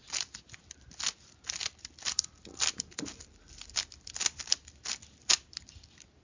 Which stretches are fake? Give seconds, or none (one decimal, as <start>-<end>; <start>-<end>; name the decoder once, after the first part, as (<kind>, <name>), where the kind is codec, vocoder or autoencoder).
none